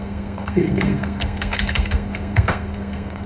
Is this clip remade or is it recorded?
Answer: remade